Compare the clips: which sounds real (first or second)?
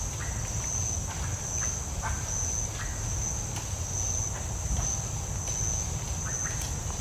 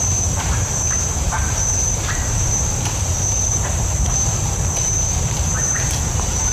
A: first